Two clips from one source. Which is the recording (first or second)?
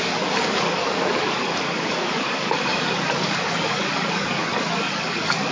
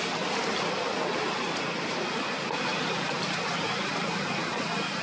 second